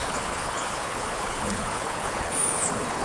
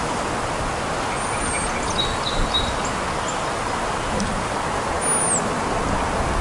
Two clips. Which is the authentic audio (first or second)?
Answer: second